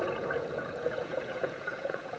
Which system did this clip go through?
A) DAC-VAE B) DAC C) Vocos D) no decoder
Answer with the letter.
C